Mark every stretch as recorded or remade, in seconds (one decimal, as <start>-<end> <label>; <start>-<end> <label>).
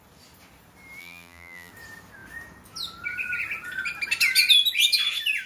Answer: 0.0-1.0 recorded; 1.0-1.7 remade; 1.7-5.5 recorded